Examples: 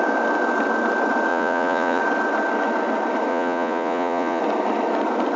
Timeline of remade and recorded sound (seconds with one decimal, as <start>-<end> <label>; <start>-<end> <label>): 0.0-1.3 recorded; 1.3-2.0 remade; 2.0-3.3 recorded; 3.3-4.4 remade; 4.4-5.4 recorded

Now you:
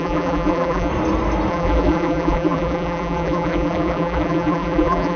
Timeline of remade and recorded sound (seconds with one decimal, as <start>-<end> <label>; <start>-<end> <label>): 0.0-0.9 remade; 0.9-1.5 recorded; 1.5-5.2 remade

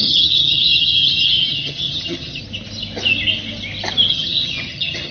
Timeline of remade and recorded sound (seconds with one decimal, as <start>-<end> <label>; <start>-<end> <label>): 0.0-2.4 remade; 2.4-4.1 recorded; 4.1-5.1 remade

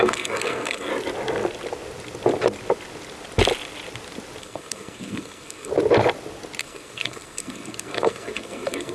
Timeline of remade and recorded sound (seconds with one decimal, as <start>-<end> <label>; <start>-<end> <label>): 0.0-0.9 remade; 0.9-4.4 recorded; 4.4-5.7 remade; 5.7-6.6 recorded; 6.6-8.9 remade